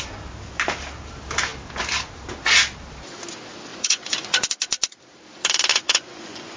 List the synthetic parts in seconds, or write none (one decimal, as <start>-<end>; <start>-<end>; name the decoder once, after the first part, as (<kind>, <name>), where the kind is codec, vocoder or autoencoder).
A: 3.7-4.5 (vocoder, Vocos); 5.7-6.6